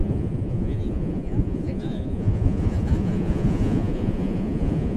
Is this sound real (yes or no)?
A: no